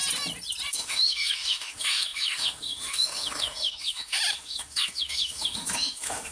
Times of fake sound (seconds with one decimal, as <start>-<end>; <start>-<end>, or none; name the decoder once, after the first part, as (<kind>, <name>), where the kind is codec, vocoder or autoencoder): 0.7-6.3 (autoencoder, DAC-VAE)